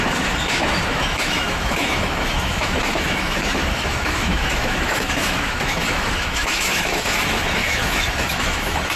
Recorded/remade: remade